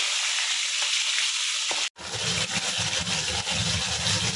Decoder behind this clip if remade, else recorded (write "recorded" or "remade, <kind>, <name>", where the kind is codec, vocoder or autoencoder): recorded